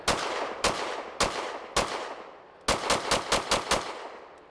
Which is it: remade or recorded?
recorded